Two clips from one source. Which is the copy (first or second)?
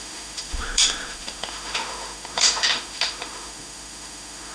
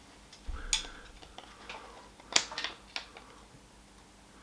first